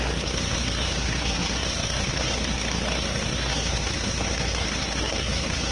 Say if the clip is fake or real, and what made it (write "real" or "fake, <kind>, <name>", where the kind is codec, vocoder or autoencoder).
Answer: fake, codec, SNAC